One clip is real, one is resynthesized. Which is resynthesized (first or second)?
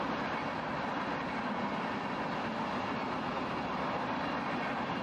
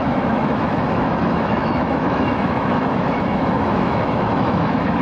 second